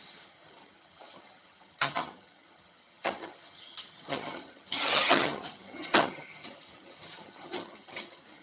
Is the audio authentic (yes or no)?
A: no